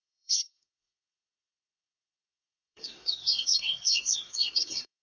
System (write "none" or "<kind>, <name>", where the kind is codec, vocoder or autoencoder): codec, SNAC